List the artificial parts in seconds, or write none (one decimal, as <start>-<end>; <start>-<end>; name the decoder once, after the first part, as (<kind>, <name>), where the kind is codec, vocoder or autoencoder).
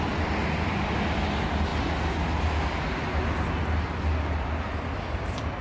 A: none